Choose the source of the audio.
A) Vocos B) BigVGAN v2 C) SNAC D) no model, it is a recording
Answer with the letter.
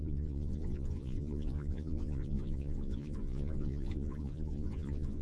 A